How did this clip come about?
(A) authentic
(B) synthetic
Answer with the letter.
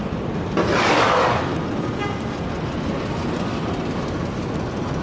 A